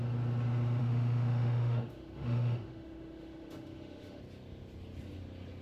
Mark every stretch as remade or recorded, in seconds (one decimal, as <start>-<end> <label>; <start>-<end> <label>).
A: 0.0-0.8 recorded; 0.8-4.2 remade; 4.2-5.6 recorded